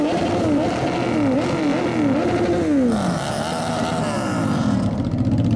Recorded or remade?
recorded